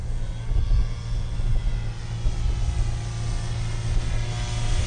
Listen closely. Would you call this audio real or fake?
real